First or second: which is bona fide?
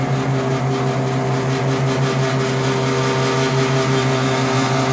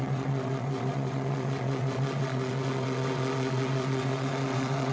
first